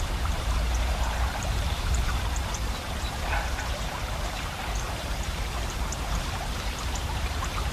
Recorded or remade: remade